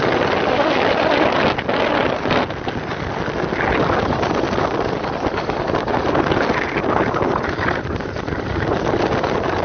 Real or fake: real